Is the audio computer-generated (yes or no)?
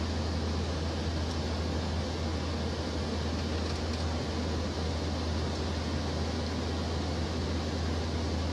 no